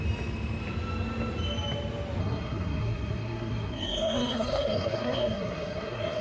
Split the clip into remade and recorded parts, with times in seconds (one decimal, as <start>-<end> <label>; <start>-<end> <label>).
0.0-2.2 recorded; 2.2-6.2 remade